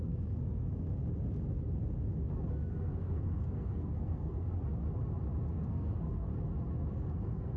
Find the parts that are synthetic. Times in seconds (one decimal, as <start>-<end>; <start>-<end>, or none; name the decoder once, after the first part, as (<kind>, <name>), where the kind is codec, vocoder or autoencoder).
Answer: 0.0-0.9 (codec, SNAC); 2.7-4.5; 5.5-6.3; 6.9-7.6